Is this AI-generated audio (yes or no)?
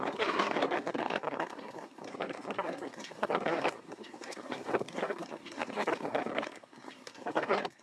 yes